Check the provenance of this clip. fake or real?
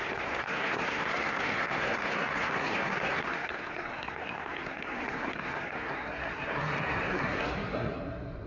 fake